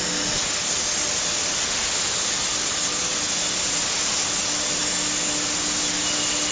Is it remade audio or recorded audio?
recorded